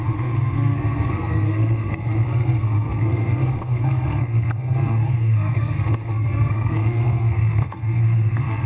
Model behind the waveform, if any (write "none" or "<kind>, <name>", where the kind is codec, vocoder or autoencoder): codec, SNAC